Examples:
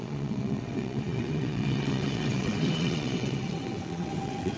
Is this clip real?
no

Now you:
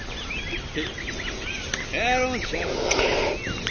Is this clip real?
yes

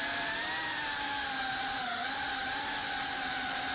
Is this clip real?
yes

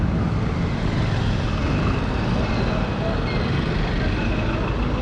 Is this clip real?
yes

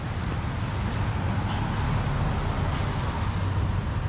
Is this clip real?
yes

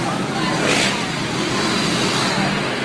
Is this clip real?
yes